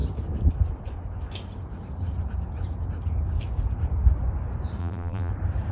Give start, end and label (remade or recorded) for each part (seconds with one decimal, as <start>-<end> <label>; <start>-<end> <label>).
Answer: 0.0-4.8 recorded; 4.8-5.3 remade; 5.3-5.7 recorded